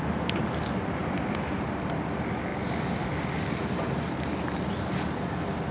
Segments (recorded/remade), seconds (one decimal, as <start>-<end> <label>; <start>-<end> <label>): 0.0-5.7 recorded

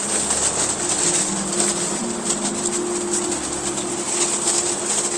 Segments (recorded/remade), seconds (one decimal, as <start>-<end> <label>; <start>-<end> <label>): 0.0-5.2 recorded